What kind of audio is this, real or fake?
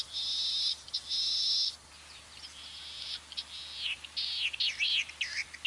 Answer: real